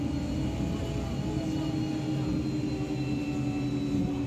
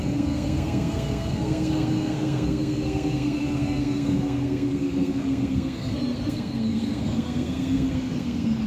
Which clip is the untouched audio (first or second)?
first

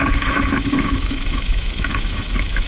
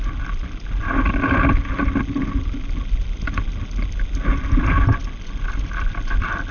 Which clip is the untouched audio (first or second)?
second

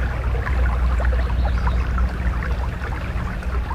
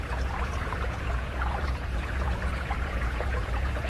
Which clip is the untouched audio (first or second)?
first